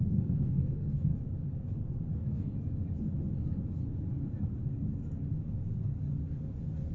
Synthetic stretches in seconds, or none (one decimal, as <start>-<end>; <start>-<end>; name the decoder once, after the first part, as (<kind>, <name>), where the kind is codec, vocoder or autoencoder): 0.0-1.1 (codec, SNAC); 2.1-2.5